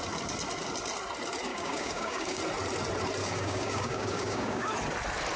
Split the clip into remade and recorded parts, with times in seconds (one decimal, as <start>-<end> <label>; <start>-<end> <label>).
0.0-1.5 recorded; 1.5-2.4 remade; 2.4-3.2 recorded; 3.2-4.7 remade; 4.7-5.4 recorded